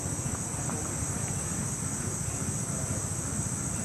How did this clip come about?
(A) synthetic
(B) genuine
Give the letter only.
B